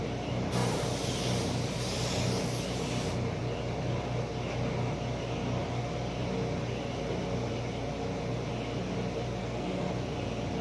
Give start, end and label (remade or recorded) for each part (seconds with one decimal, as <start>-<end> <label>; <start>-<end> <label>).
0.0-9.4 recorded; 9.4-9.9 remade; 9.9-10.6 recorded